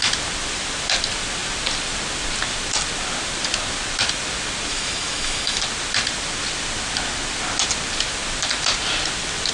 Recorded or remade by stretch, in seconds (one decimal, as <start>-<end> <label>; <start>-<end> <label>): 0.0-4.7 recorded; 4.7-5.6 remade; 5.6-9.5 recorded